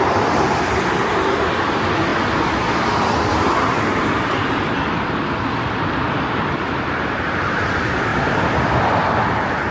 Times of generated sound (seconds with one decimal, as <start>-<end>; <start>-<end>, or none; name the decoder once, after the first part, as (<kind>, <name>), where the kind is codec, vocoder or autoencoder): 0.0-9.7 (vocoder, BigVGAN v2)